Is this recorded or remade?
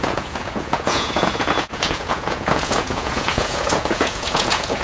remade